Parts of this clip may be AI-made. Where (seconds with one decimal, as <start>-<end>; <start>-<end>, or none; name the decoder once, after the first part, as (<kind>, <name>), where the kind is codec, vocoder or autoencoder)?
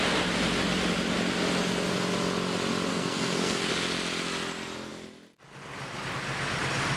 2.9-3.7 (codec, SNAC)